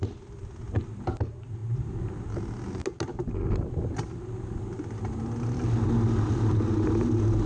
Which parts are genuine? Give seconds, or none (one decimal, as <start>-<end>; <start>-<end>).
0.0-7.5